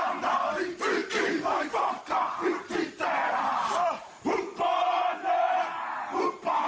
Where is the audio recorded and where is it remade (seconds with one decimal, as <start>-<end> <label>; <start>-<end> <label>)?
0.0-1.0 recorded; 1.0-1.8 remade; 1.8-3.5 recorded; 3.5-5.6 remade; 5.6-6.7 recorded